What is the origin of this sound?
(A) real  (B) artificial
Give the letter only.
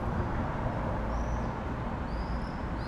A